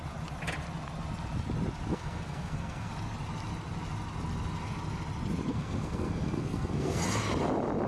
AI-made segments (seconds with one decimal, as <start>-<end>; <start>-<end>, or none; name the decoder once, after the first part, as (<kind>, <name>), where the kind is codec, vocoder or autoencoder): 1.9-2.9 (codec, SNAC); 5.5-7.0

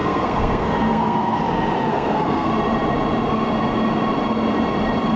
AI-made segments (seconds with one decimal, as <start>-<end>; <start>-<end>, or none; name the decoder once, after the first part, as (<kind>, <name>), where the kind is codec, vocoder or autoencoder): 0.0-1.4 (codec, SNAC); 1.9-2.5